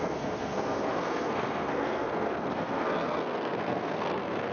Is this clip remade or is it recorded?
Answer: remade